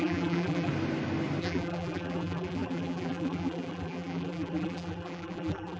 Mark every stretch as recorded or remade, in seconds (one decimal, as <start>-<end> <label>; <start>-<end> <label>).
0.0-0.7 remade; 0.7-1.4 recorded; 1.4-5.8 remade